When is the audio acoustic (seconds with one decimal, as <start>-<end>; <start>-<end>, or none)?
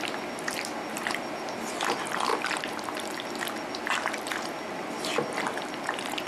0.0-6.3